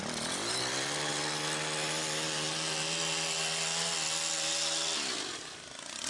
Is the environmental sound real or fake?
real